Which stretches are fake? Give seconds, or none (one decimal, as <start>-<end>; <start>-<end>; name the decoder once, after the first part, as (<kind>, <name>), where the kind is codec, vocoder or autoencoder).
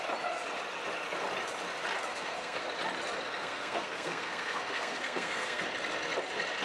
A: 2.1-2.6 (codec, SNAC); 3.4-5.6